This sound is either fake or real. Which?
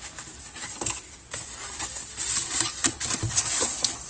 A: real